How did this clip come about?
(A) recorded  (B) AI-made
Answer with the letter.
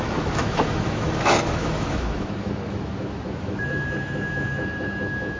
B